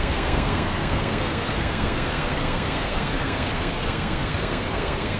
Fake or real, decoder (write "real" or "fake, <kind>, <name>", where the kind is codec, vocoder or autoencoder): fake, codec, SNAC